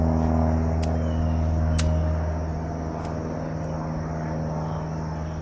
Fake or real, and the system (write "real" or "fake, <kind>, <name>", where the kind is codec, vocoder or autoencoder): real